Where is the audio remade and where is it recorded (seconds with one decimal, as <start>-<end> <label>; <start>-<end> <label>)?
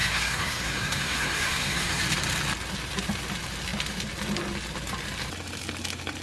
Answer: 0.0-2.0 remade; 2.0-6.2 recorded